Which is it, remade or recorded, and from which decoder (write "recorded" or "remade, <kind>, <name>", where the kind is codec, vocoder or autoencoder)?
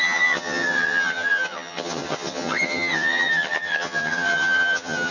remade, vocoder, HiFi-GAN